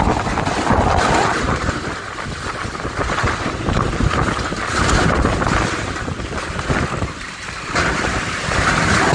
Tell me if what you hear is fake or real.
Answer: real